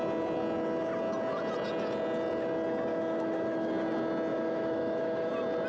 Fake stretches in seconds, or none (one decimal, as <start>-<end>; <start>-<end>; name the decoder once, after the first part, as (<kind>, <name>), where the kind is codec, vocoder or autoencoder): 2.9-3.7 (autoencoder, DAC-VAE); 4.3-5.3